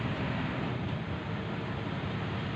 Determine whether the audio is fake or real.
fake